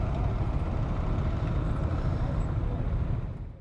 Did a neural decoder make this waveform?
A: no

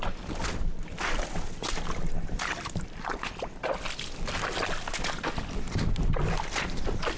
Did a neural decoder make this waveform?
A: no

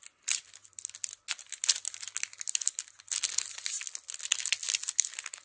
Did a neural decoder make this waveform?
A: no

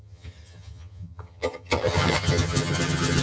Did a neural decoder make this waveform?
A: yes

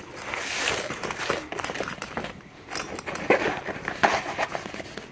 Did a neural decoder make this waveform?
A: no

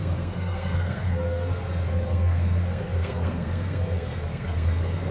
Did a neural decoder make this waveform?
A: yes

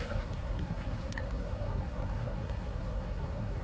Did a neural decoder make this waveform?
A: yes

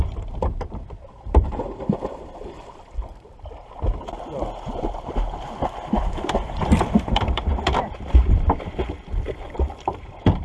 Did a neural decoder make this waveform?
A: yes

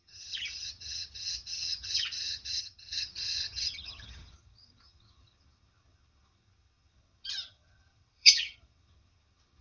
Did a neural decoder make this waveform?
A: yes